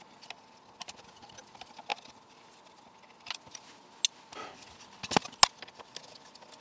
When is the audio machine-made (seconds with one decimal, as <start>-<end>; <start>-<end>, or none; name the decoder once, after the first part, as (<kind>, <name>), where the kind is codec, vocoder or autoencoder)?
none